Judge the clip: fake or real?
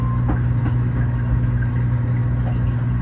real